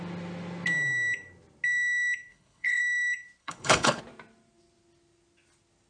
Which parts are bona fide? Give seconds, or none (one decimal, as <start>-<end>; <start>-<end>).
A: 0.0-2.3; 2.8-3.4; 4.0-5.9